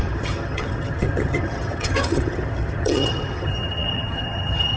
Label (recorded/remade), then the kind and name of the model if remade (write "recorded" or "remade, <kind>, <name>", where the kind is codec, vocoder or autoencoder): remade, vocoder, HiFi-GAN